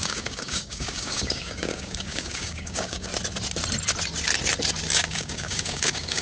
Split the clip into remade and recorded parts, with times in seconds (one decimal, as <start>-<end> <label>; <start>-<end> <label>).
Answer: 0.0-3.1 remade; 3.1-4.9 recorded; 4.9-6.2 remade